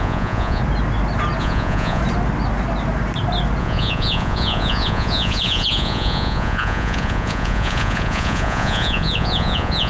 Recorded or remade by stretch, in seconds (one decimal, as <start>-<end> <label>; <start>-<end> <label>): 0.0-0.6 remade; 0.6-1.4 recorded; 1.4-2.0 remade; 2.0-3.6 recorded; 3.6-9.9 remade